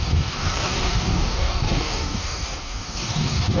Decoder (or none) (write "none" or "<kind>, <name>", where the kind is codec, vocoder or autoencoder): codec, DAC